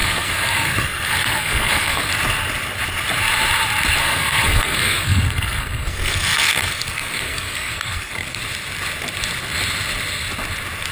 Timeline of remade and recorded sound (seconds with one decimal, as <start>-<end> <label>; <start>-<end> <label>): 0.0-2.1 remade; 2.1-4.0 recorded; 4.0-8.4 remade; 8.4-10.9 recorded